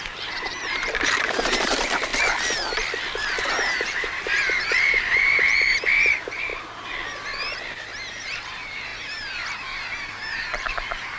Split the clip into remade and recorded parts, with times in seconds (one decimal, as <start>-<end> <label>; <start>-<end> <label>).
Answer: 0.0-2.1 remade; 2.1-3.4 recorded; 3.4-6.5 remade; 6.5-8.1 recorded; 8.1-11.2 remade